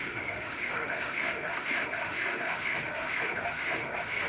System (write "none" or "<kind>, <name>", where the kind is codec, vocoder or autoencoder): autoencoder, DAC-VAE